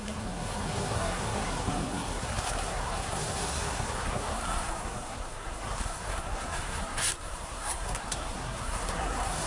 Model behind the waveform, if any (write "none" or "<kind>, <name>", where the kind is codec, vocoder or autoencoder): codec, SNAC